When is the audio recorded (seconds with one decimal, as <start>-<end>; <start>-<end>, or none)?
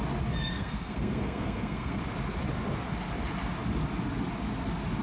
0.0-0.4; 2.0-5.0